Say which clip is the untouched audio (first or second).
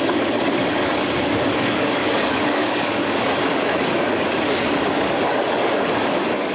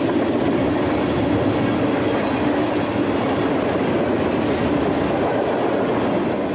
second